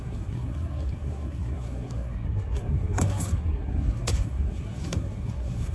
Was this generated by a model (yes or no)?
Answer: yes